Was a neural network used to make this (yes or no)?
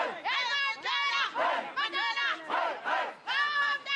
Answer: no